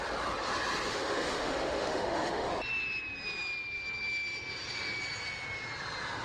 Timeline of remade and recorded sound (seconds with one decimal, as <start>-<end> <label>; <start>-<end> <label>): 0.0-0.9 recorded; 0.9-2.5 remade; 2.5-6.2 recorded